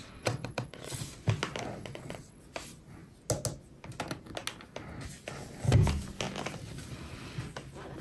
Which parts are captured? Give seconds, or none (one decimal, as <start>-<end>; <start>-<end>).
1.0-1.8; 2.4-8.0